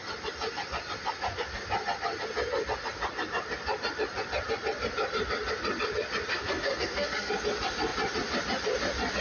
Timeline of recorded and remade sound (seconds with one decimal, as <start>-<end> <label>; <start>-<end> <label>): 0.0-6.3 recorded; 6.3-7.3 remade; 7.3-9.2 recorded